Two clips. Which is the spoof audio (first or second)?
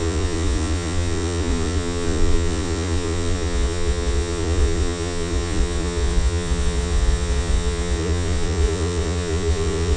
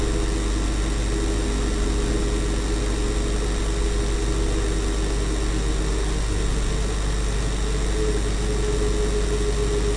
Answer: first